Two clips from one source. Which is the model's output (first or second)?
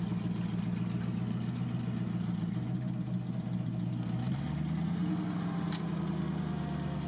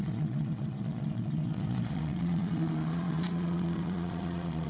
second